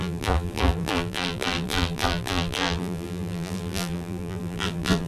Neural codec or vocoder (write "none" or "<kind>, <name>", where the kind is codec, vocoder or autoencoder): vocoder, BigVGAN v2